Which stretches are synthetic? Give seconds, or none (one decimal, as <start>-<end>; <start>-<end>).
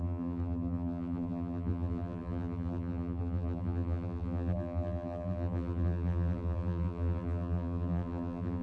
0.0-8.6